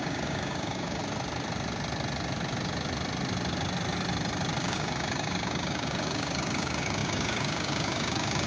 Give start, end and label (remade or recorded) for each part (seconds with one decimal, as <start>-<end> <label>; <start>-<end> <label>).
0.0-1.0 remade; 1.0-4.6 recorded; 4.6-8.5 remade